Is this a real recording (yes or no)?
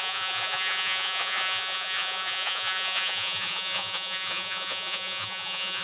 no